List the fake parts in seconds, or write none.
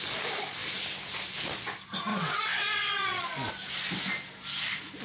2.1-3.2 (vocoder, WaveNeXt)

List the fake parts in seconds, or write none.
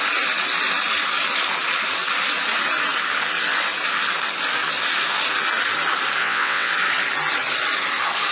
6.2-6.7 (vocoder, WaveNeXt)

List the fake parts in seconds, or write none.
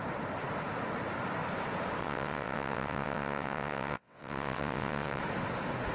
2.0-5.2 (vocoder, WaveNeXt)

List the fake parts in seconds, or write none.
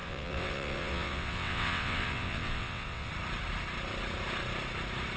0.0-3.1 (vocoder, WaveNeXt)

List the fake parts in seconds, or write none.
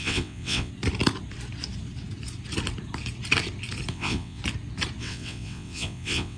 0.0-0.7 (vocoder, WaveNeXt); 3.9-4.4; 5.0-6.4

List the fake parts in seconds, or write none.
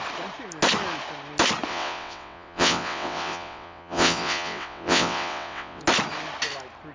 1.7-5.8 (vocoder, WaveNeXt)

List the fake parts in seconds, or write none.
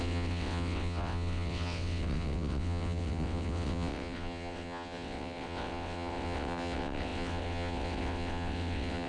0.0-9.1 (vocoder, WaveNeXt)